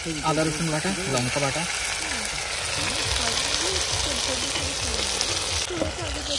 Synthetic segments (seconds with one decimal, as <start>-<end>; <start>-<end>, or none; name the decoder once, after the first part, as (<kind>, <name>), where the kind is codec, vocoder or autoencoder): none